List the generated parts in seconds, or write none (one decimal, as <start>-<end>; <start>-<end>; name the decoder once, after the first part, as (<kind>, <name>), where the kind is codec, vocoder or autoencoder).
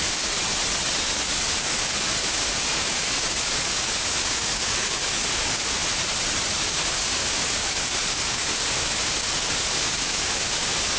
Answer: 0.0-0.4 (codec, DAC); 1.0-5.8; 6.6-11.0